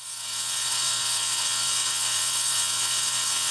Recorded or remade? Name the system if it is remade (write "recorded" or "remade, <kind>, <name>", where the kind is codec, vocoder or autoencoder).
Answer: remade, vocoder, WaveNeXt